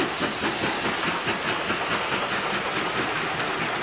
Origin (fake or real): real